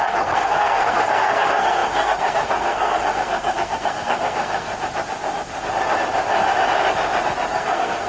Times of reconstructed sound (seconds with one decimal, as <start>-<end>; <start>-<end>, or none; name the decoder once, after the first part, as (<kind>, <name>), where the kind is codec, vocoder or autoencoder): 0.0-4.7 (codec, SNAC); 7.5-8.1